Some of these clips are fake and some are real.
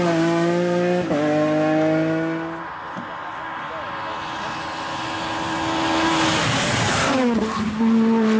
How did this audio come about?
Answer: real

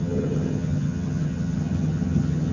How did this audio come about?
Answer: fake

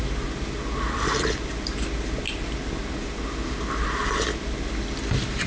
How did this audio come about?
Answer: real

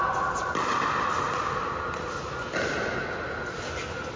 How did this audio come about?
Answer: real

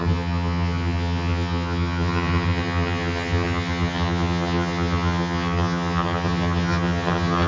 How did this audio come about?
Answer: fake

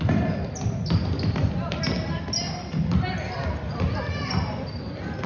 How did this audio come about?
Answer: real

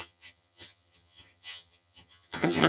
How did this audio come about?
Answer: fake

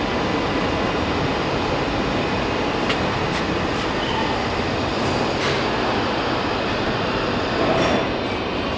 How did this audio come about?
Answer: real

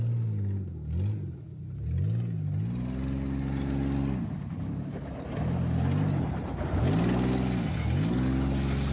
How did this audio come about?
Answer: real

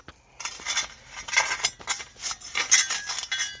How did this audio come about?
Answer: real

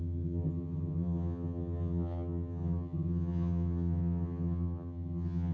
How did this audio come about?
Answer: fake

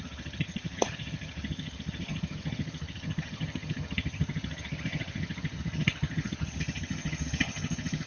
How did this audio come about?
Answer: fake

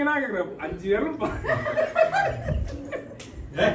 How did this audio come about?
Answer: real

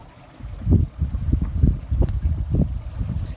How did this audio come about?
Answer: real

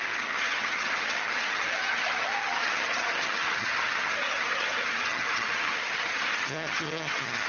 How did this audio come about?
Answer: fake